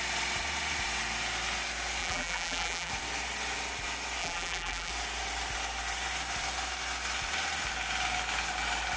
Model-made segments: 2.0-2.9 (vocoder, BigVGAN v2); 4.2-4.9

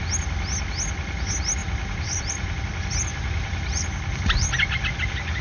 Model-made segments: 1.6-2.6 (vocoder, BigVGAN v2); 3.1-4.5